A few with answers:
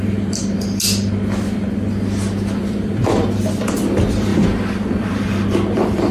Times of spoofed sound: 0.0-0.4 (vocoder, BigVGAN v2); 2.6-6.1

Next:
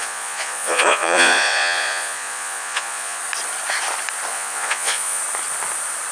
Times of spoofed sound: 0.0-3.2 (vocoder, Vocos); 4.3-5.2

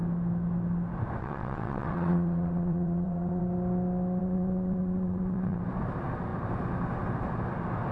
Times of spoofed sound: 1.2-3.4 (vocoder, WaveNeXt); 4.2-5.6

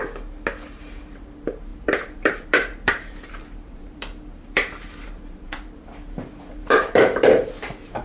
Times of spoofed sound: 0.7-8.0 (vocoder, BigVGAN v2)

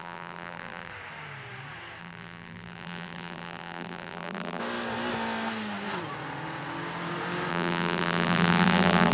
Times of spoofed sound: 0.0-0.9 (vocoder, BigVGAN v2); 2.0-4.6; 7.5-9.1

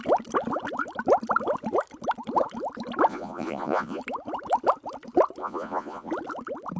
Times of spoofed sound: 3.1-4.0 (vocoder, Vocos); 5.4-6.1

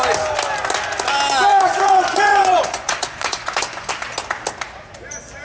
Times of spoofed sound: 1.5-3.9 (vocoder, Vocos)